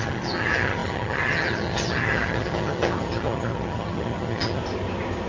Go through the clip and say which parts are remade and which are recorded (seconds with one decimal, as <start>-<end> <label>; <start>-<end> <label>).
0.0-4.6 remade; 4.6-5.3 recorded